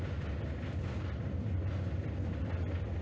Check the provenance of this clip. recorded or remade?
recorded